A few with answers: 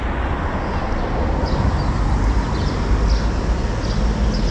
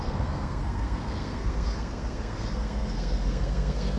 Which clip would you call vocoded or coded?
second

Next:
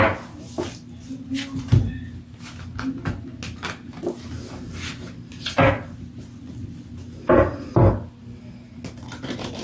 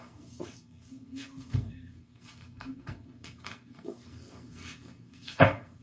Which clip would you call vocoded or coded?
second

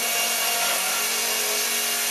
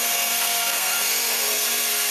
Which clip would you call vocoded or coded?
second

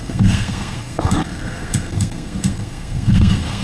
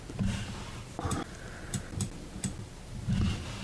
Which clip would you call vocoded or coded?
first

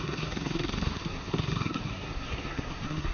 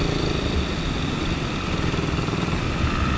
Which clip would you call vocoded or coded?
first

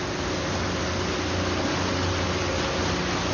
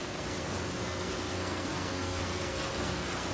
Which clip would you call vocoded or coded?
second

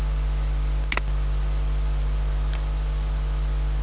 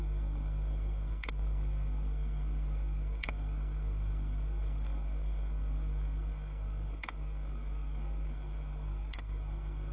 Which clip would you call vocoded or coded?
second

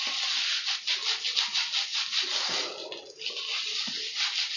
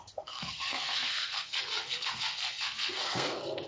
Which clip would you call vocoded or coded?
second